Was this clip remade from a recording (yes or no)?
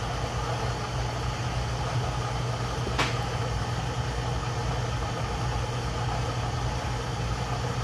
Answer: no